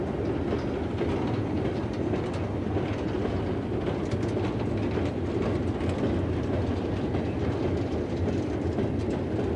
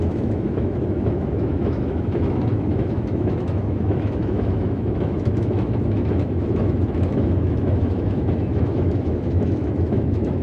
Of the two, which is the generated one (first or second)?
second